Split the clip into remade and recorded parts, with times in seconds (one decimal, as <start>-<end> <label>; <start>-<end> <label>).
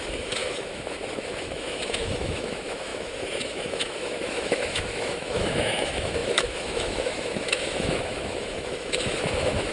0.0-9.7 remade